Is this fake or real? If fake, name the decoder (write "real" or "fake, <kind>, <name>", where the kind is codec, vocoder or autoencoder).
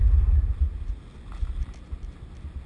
real